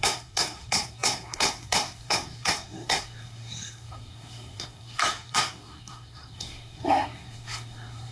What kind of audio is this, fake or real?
fake